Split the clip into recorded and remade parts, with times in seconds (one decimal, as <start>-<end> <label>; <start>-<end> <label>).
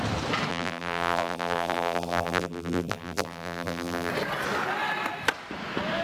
0.0-0.5 recorded; 0.5-4.1 remade; 4.1-6.0 recorded